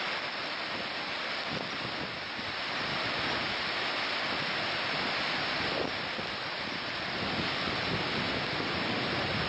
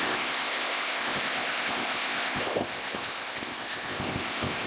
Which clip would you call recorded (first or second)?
first